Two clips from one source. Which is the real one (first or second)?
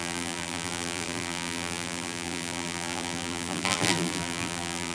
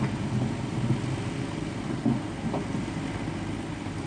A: second